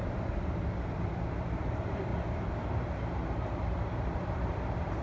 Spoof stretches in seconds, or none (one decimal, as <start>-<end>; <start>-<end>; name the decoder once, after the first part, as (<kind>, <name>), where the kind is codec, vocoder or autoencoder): 0.0-2.1 (vocoder, BigVGAN v2); 3.6-5.0